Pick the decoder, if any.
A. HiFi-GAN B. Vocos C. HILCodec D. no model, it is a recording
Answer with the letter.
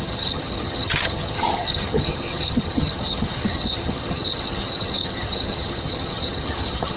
A